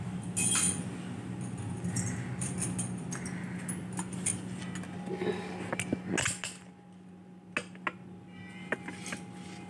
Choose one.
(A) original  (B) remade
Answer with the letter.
A